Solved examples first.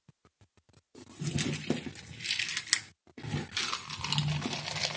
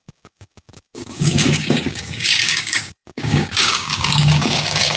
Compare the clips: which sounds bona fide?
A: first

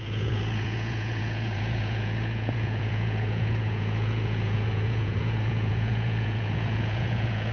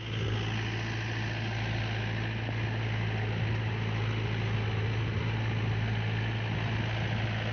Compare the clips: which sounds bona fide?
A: second